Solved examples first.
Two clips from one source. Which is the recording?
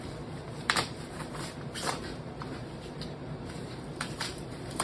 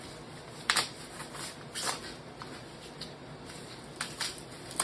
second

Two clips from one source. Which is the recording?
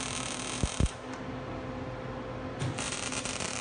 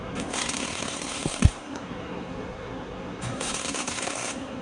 first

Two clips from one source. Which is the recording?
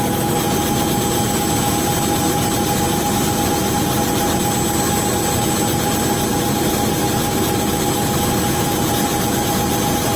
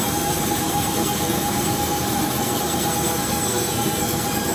first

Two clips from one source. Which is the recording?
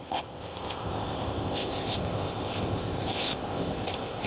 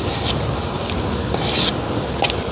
second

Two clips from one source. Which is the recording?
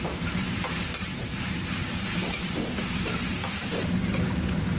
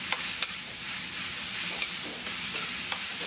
second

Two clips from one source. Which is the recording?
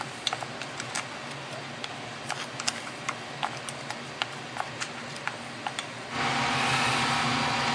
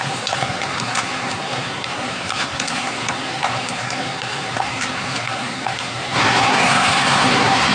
first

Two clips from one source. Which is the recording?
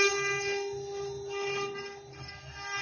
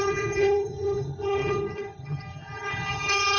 first